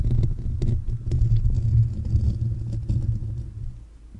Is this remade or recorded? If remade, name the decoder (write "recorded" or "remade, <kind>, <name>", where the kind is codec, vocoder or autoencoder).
recorded